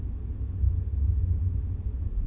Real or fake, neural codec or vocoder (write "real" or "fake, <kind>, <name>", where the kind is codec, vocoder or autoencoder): real